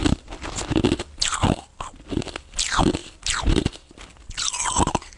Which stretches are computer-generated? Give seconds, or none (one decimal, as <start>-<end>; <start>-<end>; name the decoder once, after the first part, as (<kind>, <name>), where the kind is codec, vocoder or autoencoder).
3.0-3.6 (vocoder, BigVGAN v2)